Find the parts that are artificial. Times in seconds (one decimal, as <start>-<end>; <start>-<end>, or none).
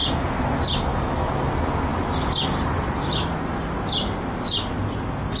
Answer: 0.9-1.5